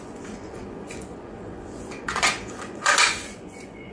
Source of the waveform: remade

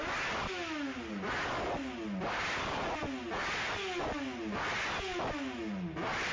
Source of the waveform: recorded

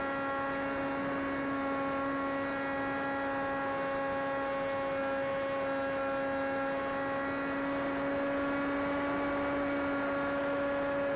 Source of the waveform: recorded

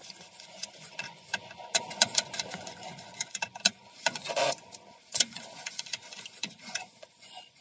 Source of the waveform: remade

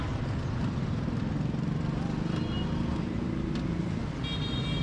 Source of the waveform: recorded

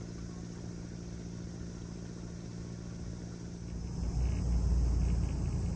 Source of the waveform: recorded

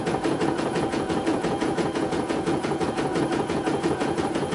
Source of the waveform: remade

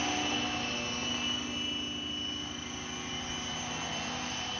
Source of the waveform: recorded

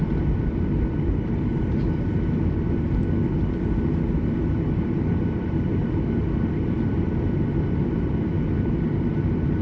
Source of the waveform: recorded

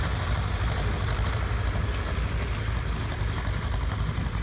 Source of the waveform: recorded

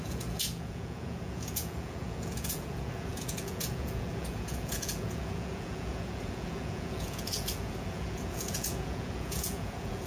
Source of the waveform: remade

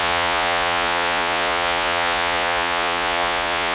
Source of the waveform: remade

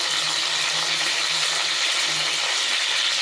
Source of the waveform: recorded